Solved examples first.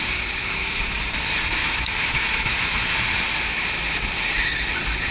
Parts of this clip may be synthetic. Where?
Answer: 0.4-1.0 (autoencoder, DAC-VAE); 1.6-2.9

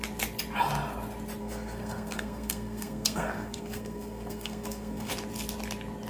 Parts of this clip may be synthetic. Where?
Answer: 1.4-5.1 (codec, SNAC)

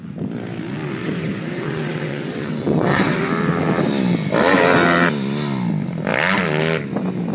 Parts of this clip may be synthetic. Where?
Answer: 1.0-3.3 (vocoder, WaveNeXt)

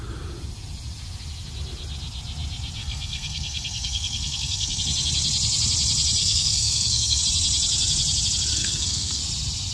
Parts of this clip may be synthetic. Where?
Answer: 2.8-4.8 (codec, SNAC); 6.2-7.2; 8.5-9.2

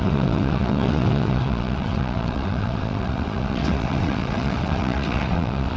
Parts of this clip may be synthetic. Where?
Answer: 0.0-5.8 (vocoder, WaveNeXt)

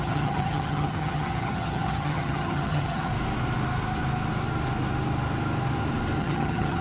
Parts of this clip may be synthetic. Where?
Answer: 0.0-3.1 (vocoder, HiFi-GAN); 6.2-6.8